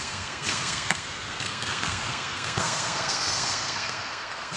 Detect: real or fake fake